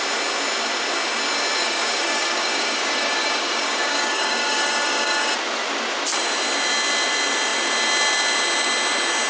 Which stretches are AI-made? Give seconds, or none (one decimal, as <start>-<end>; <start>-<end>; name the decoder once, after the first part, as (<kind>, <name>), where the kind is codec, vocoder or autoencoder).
1.6-5.3 (codec, DAC)